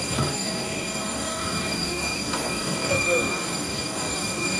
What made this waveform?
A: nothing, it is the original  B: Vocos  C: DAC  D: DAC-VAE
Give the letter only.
C